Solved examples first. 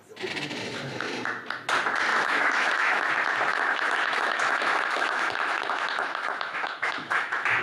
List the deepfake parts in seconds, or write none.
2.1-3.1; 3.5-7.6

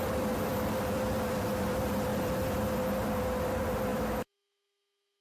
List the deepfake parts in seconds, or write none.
3.9-5.2

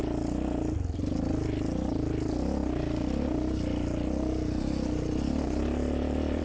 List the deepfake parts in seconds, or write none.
none

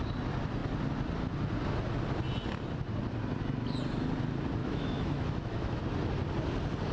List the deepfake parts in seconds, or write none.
4.6-5.8

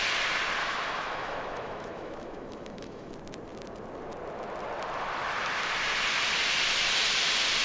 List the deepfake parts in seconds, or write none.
0.6-3.1

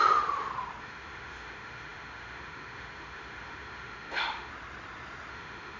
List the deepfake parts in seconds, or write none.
0.8-4.5; 5.3-5.8

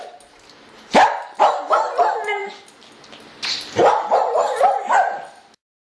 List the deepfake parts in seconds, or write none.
none

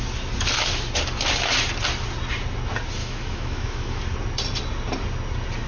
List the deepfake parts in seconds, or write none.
3.0-4.0